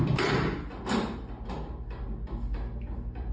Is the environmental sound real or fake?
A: real